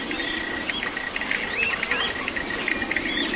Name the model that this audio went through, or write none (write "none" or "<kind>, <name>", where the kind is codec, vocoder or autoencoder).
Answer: none